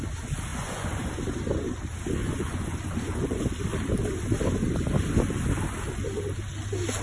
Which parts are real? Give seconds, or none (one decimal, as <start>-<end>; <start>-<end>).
0.0-0.5; 1.1-2.2; 3.5-7.0